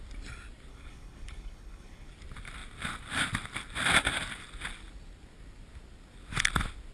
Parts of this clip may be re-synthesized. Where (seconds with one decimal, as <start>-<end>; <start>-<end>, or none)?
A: 0.7-2.1